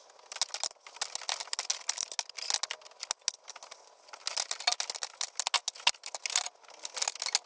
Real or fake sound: real